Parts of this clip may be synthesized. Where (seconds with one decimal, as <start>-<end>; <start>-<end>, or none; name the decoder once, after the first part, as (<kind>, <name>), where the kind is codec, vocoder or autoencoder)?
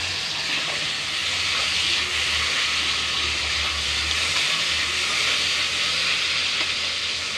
none